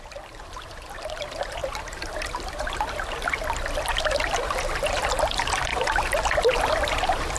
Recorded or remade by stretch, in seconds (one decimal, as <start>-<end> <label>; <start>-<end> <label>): 0.0-5.7 remade; 5.7-6.7 recorded; 6.7-7.4 remade